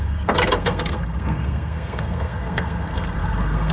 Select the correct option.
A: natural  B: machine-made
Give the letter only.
B